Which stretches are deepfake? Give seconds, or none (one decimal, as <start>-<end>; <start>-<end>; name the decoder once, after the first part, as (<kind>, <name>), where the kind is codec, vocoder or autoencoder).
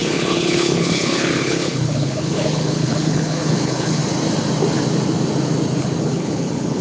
0.0-4.0 (codec, HILCodec); 6.0-6.8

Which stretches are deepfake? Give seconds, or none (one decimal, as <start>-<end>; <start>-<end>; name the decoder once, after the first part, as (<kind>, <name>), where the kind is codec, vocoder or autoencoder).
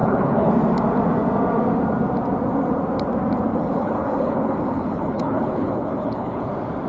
0.0-0.5 (codec, HILCodec); 3.5-6.5